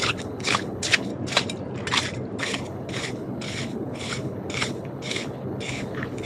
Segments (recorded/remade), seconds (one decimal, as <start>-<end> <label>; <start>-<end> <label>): 0.0-1.1 remade; 1.1-2.4 recorded; 2.4-6.3 remade

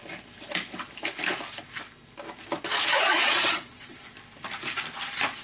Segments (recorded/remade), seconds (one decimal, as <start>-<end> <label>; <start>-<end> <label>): 0.0-2.7 recorded; 2.7-4.1 remade; 4.1-5.4 recorded